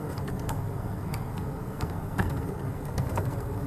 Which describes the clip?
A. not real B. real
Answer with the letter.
A